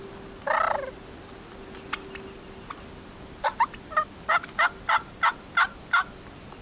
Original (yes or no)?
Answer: yes